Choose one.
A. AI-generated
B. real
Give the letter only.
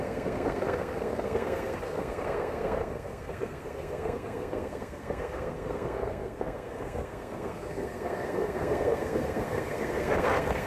A